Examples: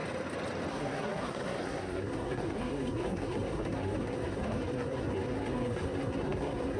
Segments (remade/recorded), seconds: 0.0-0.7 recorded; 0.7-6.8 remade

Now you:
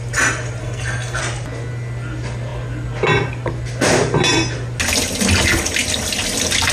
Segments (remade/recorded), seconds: 0.0-0.6 recorded; 0.6-1.2 remade; 1.2-6.7 recorded

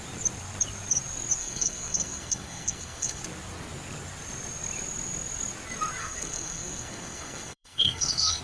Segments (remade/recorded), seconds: 0.0-1.4 recorded; 1.4-3.2 remade; 3.2-6.0 recorded; 6.0-8.4 remade